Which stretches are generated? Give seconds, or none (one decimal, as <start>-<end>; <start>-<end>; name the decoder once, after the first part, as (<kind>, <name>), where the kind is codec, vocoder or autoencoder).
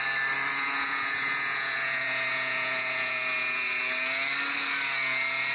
0.5-3.8 (vocoder, Vocos)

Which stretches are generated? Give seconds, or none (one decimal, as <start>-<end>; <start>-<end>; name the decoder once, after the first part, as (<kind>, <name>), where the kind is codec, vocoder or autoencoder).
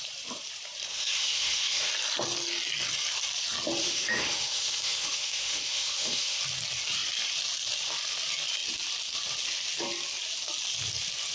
0.9-1.9 (autoencoder, DAC-VAE); 3.8-6.4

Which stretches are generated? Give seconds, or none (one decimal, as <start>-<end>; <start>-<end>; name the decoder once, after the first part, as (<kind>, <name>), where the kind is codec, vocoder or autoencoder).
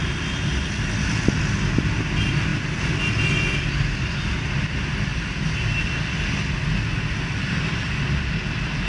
none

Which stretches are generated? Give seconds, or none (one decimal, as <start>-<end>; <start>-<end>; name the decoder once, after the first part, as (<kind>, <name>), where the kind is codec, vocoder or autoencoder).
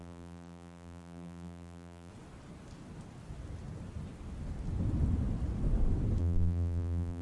0.0-2.1 (vocoder, BigVGAN v2); 6.2-7.2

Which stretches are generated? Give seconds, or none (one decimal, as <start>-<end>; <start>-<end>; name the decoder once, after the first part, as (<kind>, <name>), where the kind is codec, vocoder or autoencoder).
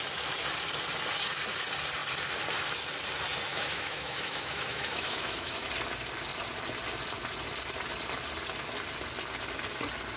3.5-5.7 (autoencoder, DAC-VAE)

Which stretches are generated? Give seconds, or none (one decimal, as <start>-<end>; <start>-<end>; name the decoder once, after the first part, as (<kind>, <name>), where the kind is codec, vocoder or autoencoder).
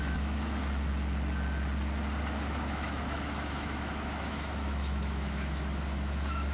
0.0-0.9 (autoencoder, DAC-VAE); 2.2-6.5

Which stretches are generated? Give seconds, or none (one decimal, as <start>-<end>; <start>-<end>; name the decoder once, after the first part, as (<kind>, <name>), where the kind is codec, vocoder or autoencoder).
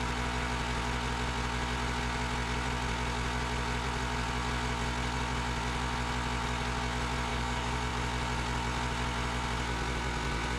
7.3-7.9 (codec, DAC)